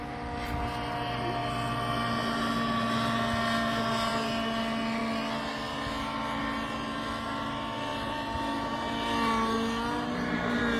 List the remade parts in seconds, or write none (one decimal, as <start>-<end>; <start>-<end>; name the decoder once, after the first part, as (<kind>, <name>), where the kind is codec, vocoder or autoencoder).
none